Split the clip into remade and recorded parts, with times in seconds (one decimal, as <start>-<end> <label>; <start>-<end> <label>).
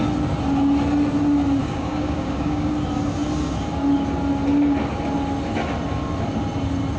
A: 0.0-1.6 recorded; 1.6-2.7 remade; 2.7-7.0 recorded